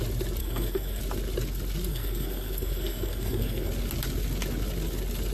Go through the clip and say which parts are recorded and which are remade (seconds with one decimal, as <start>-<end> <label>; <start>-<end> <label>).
0.0-0.4 recorded; 0.4-1.0 remade; 1.0-1.9 recorded; 1.9-3.7 remade; 3.7-5.3 recorded

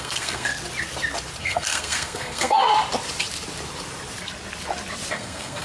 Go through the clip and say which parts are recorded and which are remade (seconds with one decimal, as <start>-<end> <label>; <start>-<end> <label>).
0.0-0.5 remade; 0.5-1.4 recorded; 1.4-2.7 remade; 2.7-5.1 recorded; 5.1-5.6 remade

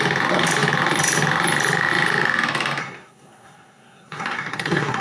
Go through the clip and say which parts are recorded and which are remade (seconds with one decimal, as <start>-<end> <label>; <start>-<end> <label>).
0.0-2.8 recorded; 2.8-5.0 remade

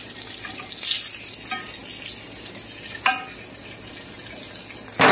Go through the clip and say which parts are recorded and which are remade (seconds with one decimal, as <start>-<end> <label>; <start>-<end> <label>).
0.0-5.1 recorded

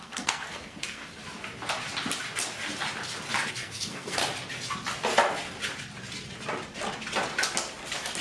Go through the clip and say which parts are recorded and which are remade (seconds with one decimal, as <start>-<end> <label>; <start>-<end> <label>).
0.0-1.0 remade; 1.0-3.5 recorded; 3.5-4.2 remade; 4.2-8.2 recorded

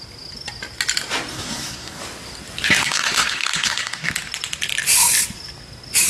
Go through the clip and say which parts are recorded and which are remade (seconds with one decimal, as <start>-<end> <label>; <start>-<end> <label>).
0.0-1.3 recorded; 1.3-2.0 remade; 2.0-2.8 recorded; 2.8-4.1 remade; 4.1-6.1 recorded

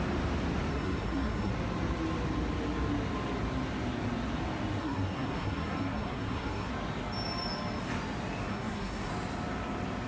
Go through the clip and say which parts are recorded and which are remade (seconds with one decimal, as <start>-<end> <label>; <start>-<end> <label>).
0.0-0.7 recorded; 0.7-1.5 remade; 1.5-4.8 recorded; 4.8-6.7 remade; 6.7-8.5 recorded; 8.5-9.1 remade; 9.1-10.1 recorded

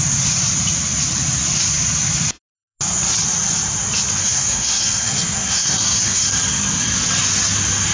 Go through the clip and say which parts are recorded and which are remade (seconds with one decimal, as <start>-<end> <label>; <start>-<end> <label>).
0.0-4.2 recorded; 4.2-6.3 remade; 6.3-7.9 recorded